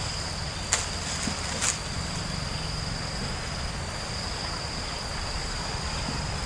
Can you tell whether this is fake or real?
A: real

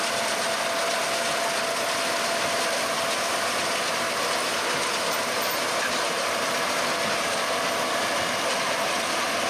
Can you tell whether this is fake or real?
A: real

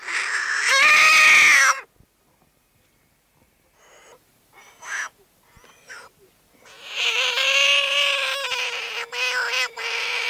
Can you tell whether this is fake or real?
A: real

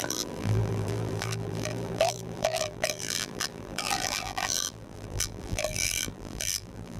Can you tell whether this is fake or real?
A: fake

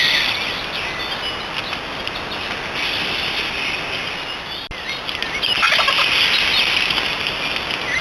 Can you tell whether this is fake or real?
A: real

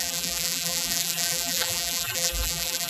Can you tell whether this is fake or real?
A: fake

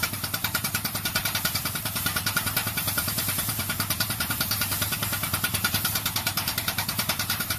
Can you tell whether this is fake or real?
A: fake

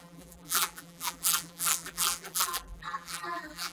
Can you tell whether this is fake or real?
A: fake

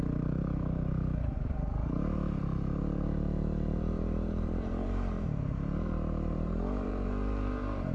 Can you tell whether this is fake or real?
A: fake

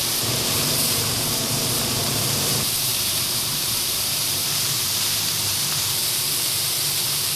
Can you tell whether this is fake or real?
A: fake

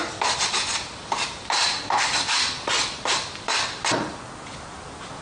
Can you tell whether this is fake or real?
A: fake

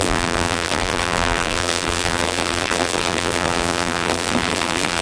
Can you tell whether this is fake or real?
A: fake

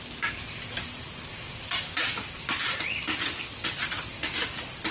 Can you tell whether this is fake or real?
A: fake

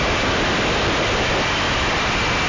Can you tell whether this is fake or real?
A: fake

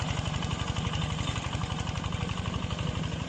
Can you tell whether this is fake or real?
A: real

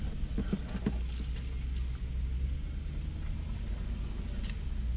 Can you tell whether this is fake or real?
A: real